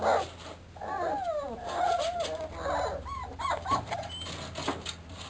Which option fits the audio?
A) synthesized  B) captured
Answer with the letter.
B